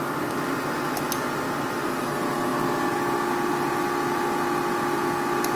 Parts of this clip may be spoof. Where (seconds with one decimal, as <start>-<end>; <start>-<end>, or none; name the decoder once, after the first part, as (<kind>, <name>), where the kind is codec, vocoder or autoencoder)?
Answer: none

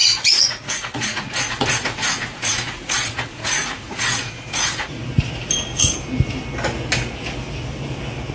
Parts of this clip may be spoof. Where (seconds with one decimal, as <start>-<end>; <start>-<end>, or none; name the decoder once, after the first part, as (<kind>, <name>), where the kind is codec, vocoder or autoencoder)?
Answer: 0.0-5.0 (vocoder, Vocos)